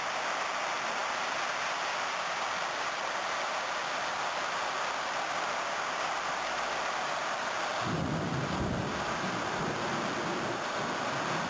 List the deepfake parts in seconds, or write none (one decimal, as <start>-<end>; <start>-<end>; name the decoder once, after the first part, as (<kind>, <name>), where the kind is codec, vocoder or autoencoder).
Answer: none